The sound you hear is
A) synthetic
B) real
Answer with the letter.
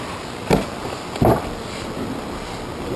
B